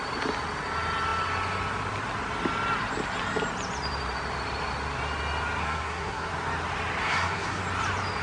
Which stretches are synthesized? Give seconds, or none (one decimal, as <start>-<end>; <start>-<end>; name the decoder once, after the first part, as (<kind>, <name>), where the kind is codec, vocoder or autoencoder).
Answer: 5.6-6.3 (codec, SNAC); 7.0-7.6